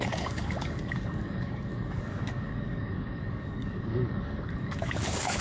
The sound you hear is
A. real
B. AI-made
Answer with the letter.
B